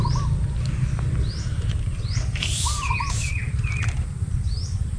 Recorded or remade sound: remade